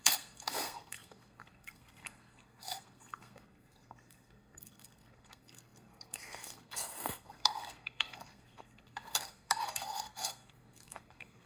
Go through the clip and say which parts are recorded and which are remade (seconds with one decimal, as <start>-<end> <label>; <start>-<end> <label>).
0.0-11.5 remade